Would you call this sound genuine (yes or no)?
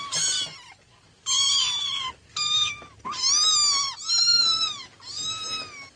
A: yes